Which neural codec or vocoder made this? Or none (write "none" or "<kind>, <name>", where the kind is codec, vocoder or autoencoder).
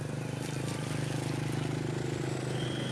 none